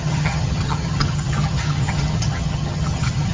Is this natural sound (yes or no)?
no